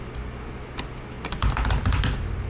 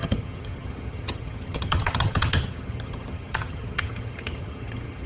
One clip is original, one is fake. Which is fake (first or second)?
second